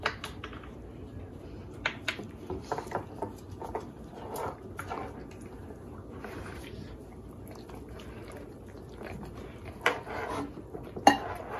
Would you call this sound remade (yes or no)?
no